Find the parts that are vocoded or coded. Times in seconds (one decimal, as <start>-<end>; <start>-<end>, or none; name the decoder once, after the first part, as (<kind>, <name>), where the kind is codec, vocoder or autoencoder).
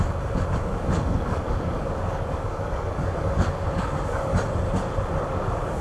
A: 0.0-4.3 (codec, DAC); 5.3-5.8